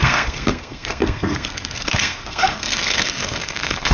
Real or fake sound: fake